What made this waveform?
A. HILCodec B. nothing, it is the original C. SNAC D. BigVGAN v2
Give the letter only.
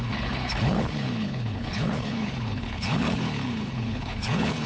A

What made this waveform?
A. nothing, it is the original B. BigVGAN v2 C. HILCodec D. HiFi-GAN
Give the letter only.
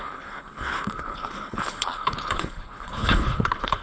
C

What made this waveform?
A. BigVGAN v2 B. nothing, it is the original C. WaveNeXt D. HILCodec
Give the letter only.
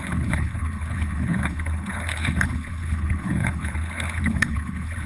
D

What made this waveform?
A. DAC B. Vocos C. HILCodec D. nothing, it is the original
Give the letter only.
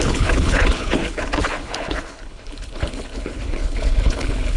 C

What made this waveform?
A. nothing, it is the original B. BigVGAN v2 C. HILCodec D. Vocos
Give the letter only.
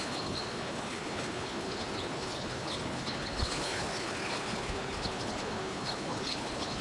C